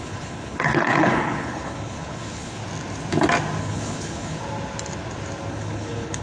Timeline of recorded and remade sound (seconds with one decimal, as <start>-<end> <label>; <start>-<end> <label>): 0.0-2.6 remade; 2.6-3.6 recorded; 3.6-4.4 remade; 4.4-5.5 recorded; 5.5-6.2 remade